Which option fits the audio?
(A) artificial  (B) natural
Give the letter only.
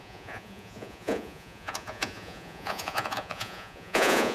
A